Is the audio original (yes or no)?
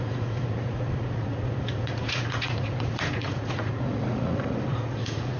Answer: no